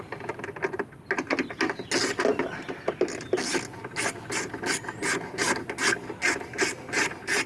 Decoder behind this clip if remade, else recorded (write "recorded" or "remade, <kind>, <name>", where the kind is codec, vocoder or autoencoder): recorded